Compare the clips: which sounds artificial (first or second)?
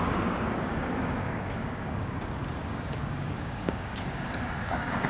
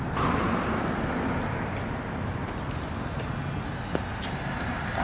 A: first